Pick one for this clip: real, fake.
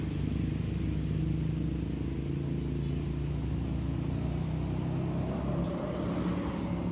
real